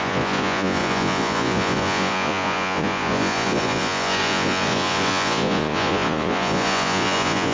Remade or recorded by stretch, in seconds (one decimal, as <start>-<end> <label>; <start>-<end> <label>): 0.0-7.5 remade